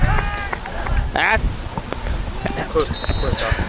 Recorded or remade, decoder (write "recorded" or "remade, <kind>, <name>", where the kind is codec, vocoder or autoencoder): recorded